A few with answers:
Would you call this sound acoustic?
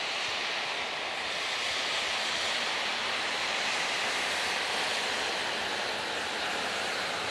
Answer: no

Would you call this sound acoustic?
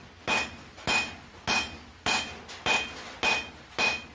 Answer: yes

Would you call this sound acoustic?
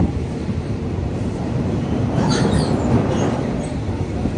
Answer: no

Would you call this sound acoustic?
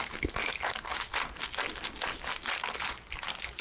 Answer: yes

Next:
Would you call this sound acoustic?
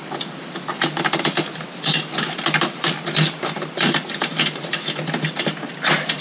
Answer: yes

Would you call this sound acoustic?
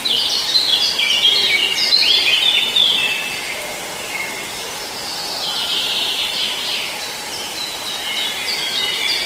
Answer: yes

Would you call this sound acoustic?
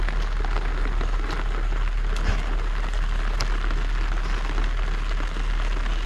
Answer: yes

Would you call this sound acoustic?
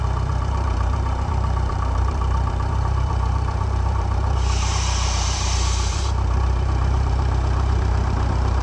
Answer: no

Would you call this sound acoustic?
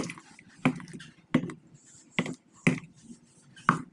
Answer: yes